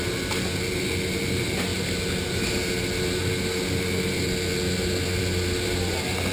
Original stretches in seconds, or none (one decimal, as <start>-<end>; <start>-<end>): 0.0-6.3